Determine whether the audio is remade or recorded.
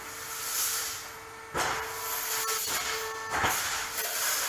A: recorded